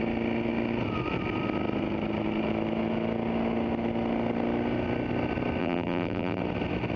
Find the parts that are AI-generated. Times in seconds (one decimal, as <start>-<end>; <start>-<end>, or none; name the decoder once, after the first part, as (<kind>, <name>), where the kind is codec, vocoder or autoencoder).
5.6-6.4 (vocoder, BigVGAN v2)

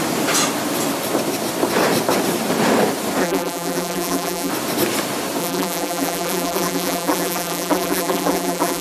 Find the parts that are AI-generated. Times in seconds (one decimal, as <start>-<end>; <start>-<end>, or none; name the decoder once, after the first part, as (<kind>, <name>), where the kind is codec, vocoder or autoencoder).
3.2-4.5 (vocoder, BigVGAN v2); 5.4-8.8

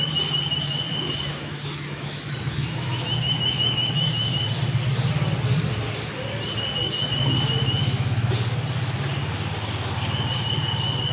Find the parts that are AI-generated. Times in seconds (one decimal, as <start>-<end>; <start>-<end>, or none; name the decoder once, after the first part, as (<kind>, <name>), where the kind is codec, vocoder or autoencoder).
1.3-4.4 (autoencoder, DAC-VAE); 7.8-8.3